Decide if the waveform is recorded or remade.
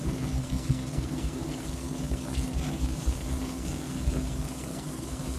remade